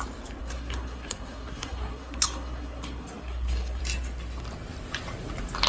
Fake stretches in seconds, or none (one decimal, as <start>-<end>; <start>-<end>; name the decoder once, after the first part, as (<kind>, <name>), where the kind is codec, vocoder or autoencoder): 0.4-3.8 (codec, SNAC)